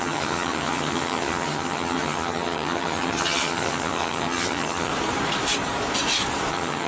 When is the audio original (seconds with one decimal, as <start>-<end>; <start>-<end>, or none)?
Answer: 4.9-6.5